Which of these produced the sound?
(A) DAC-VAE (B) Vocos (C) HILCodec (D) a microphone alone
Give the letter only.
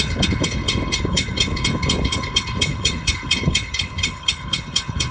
C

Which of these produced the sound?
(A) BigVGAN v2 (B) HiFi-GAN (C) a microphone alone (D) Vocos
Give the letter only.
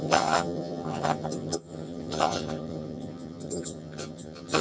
B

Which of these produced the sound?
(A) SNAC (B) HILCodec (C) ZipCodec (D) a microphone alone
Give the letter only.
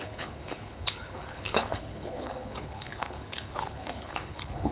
B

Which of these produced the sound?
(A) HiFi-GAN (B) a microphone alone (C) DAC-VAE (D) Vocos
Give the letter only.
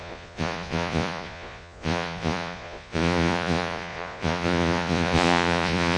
D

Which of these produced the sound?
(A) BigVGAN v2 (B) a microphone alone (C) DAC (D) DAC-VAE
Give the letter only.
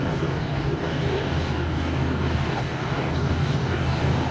C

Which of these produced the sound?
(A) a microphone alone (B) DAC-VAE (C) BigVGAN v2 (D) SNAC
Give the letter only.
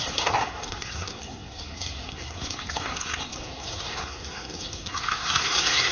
D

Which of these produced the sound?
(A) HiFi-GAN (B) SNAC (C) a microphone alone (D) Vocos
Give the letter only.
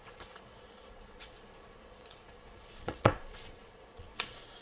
D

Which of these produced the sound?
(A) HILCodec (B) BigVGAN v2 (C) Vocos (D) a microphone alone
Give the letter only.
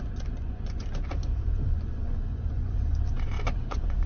C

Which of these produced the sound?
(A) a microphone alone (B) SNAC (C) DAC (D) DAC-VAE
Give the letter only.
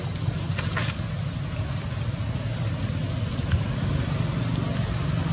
A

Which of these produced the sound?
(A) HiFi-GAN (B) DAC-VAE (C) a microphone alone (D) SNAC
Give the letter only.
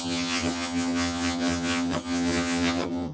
A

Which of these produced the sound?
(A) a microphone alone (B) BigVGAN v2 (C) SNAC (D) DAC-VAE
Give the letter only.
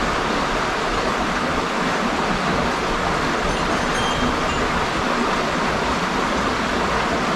A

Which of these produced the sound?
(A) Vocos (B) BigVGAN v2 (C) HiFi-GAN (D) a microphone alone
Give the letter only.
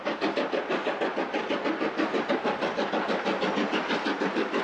D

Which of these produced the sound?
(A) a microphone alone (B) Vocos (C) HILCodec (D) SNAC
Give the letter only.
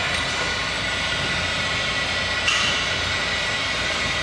A